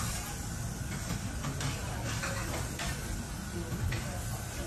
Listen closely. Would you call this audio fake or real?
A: real